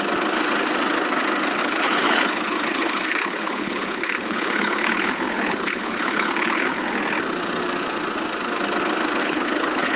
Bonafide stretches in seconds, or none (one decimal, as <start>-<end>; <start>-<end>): 0.0-1.6; 6.8-9.2